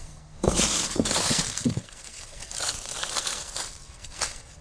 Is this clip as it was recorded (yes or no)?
no